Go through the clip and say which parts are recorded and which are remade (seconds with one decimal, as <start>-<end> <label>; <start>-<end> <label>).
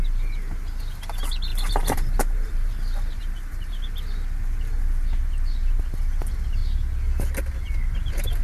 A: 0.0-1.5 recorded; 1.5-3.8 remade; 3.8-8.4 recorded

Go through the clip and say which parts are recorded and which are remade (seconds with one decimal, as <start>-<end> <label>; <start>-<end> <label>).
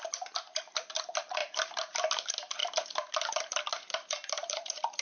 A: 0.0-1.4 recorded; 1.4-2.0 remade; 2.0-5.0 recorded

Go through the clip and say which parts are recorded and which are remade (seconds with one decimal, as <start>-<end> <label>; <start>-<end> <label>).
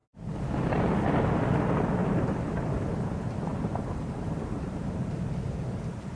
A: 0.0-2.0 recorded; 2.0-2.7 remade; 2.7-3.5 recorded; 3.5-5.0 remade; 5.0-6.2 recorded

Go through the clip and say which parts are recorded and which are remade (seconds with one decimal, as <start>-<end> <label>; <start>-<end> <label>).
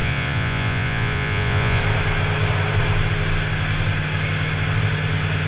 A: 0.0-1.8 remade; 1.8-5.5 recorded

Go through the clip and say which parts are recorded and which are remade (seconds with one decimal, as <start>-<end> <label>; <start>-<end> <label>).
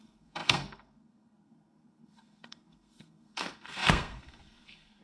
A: 0.0-5.0 remade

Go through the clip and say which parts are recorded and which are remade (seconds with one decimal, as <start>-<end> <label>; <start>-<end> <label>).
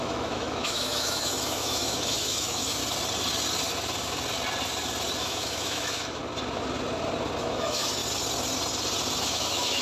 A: 0.0-2.8 remade; 2.8-5.2 recorded; 5.2-6.2 remade; 6.2-7.4 recorded; 7.4-8.0 remade; 8.0-9.2 recorded; 9.2-9.8 remade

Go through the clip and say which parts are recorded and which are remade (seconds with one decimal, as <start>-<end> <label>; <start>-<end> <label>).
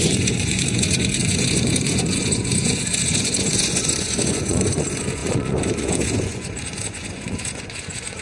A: 0.0-8.2 remade